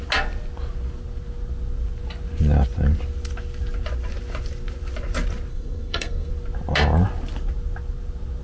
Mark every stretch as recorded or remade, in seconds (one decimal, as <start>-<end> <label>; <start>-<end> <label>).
0.0-5.5 recorded; 5.5-6.3 remade; 6.3-8.4 recorded